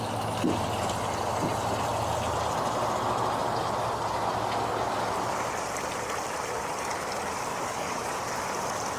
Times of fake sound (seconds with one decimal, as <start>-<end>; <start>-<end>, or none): 7.5-8.2